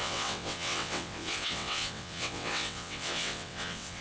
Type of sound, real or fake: fake